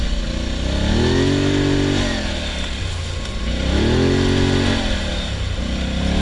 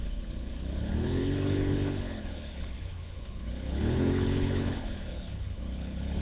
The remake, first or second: second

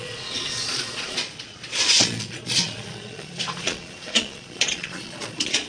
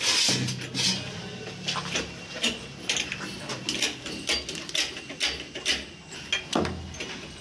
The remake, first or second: first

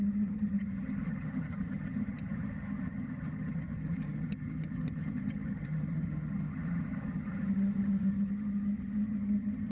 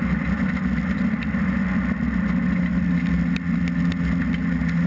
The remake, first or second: first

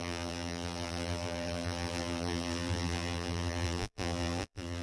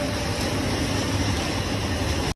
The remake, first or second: first